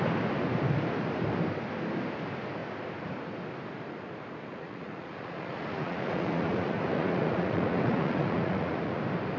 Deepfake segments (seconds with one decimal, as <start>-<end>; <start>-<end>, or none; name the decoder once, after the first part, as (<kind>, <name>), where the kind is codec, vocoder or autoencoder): 4.4-9.0 (vocoder, Vocos)